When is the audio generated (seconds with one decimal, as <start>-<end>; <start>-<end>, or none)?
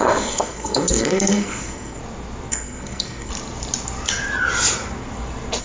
0.0-2.0; 2.5-3.3